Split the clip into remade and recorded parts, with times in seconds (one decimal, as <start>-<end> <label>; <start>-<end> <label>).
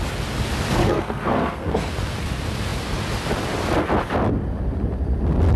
0.0-0.8 recorded; 0.8-1.9 remade; 1.9-5.6 recorded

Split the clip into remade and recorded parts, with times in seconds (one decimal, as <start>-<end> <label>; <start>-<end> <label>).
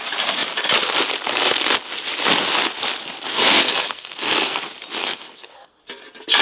0.0-3.3 recorded; 3.3-4.6 remade; 4.6-5.0 recorded; 5.0-5.8 remade; 5.8-6.4 recorded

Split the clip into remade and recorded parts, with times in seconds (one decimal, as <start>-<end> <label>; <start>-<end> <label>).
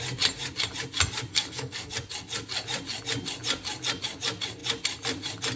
0.0-1.3 recorded; 1.3-1.9 remade; 1.9-5.6 recorded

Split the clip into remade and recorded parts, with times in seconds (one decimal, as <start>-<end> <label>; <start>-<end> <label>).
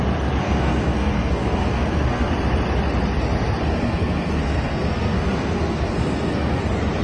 0.0-0.4 recorded; 0.4-2.3 remade; 2.3-3.6 recorded; 3.6-6.6 remade; 6.6-7.0 recorded